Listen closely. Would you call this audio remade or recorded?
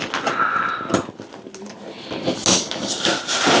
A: recorded